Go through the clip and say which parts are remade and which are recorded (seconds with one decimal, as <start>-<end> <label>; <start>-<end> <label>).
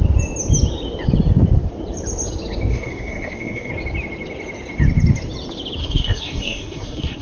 0.0-2.7 recorded; 2.7-3.7 remade; 3.7-5.8 recorded; 5.8-7.2 remade